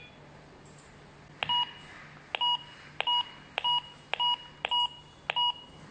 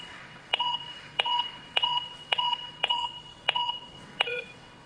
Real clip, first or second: first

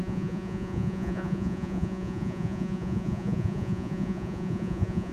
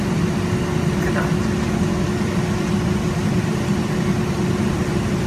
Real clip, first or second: second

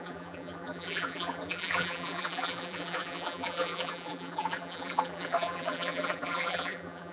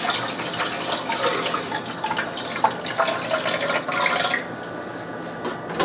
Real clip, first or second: second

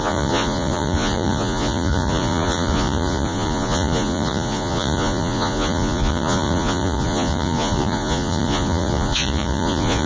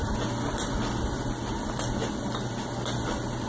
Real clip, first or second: second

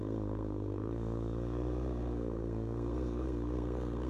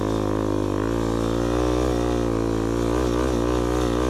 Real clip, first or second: second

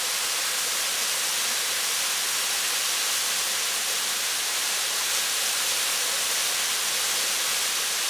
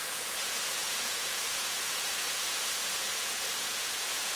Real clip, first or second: first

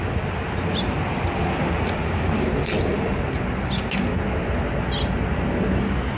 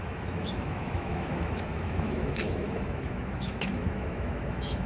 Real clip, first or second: first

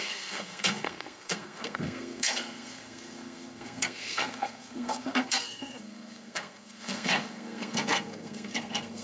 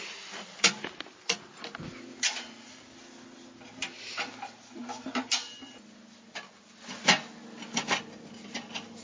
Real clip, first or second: second